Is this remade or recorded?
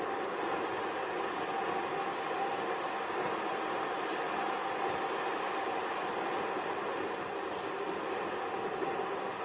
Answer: recorded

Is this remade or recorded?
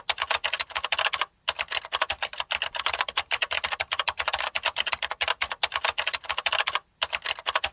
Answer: recorded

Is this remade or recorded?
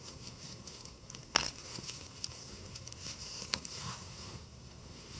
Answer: remade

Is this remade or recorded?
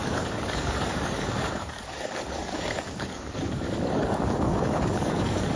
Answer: remade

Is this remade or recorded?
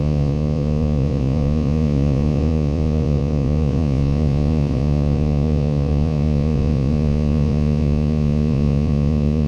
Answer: remade